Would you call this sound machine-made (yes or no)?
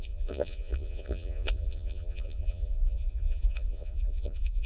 yes